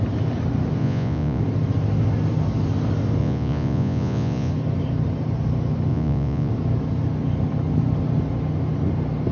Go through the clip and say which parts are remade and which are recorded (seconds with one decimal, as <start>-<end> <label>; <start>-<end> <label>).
0.0-0.8 recorded; 0.8-1.4 remade; 1.4-3.2 recorded; 3.2-4.5 remade; 4.5-5.9 recorded; 5.9-6.5 remade; 6.5-9.3 recorded